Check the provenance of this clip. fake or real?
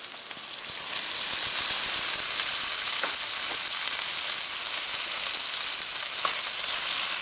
real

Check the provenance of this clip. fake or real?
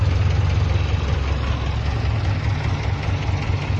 real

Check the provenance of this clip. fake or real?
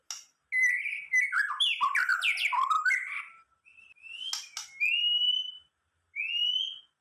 real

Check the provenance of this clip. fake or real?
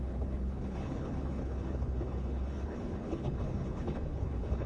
fake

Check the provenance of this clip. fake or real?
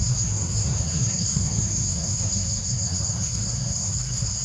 fake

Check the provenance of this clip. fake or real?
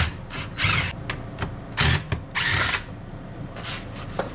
real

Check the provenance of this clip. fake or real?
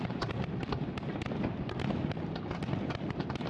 fake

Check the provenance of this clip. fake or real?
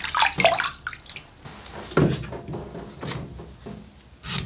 real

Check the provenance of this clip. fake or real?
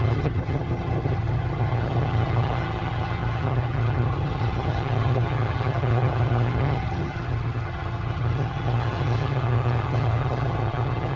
fake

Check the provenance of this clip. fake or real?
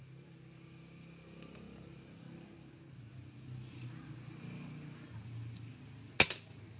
real